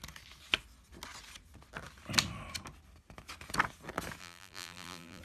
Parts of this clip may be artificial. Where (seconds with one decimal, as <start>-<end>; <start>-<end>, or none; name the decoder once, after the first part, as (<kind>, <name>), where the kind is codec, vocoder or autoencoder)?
4.2-5.2 (vocoder, BigVGAN v2)